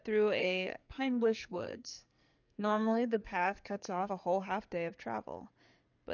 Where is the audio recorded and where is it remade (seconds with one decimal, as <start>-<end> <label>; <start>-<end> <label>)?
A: 0.0-0.4 recorded; 0.4-4.1 remade; 4.1-6.1 recorded